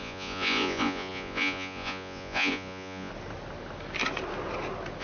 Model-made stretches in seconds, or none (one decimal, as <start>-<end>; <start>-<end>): 0.0-3.1